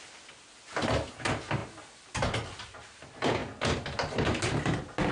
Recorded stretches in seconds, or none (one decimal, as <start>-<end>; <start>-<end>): 0.0-5.1